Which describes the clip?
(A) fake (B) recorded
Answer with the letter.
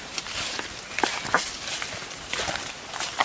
B